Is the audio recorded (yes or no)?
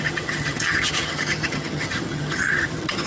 no